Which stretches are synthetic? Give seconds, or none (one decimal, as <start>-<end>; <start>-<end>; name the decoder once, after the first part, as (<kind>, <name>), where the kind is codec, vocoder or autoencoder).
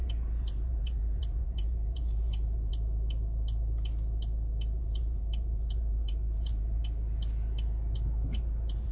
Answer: 0.0-2.7 (vocoder, BigVGAN v2); 4.8-6.8; 8.4-8.9